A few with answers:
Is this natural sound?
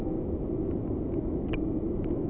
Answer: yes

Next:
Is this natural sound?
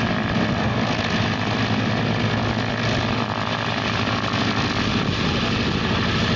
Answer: yes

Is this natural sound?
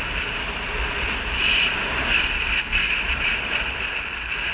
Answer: no